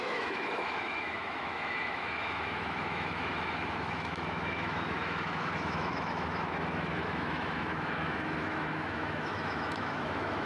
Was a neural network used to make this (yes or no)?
yes